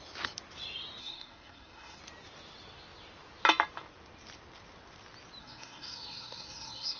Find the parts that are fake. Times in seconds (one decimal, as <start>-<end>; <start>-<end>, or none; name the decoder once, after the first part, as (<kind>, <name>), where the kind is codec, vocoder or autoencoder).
1.0-2.0 (codec, SNAC); 5.4-7.0